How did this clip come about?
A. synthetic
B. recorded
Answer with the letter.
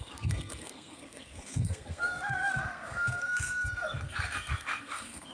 A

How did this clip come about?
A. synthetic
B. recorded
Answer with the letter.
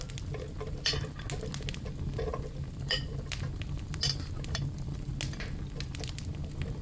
B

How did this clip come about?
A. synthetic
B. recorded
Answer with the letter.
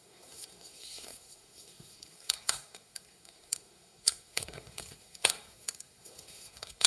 A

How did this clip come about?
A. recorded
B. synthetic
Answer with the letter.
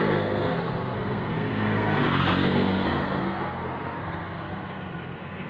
B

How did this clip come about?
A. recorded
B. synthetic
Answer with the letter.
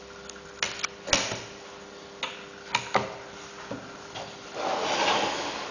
A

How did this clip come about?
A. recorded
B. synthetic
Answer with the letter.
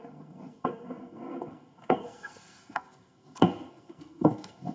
B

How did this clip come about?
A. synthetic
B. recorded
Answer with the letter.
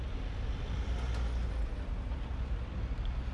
B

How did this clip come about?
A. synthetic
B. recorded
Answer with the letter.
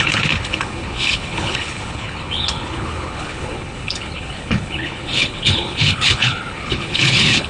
A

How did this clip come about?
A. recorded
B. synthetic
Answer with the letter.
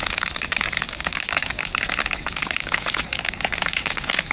B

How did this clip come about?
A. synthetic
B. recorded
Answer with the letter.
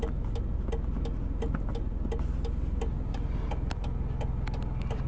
B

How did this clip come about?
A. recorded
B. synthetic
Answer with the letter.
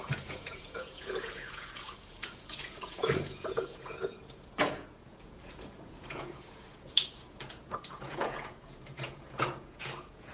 B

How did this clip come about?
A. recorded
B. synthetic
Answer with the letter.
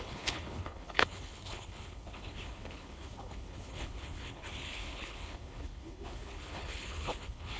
B